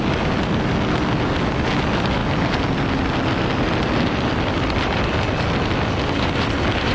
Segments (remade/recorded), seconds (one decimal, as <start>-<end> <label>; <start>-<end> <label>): 0.0-6.9 recorded